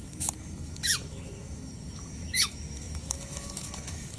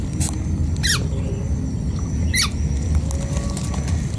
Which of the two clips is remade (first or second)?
first